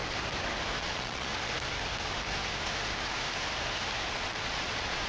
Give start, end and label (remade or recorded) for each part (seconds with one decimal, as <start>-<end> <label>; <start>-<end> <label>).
0.0-0.8 recorded; 0.8-1.3 remade; 1.3-4.1 recorded; 4.1-5.1 remade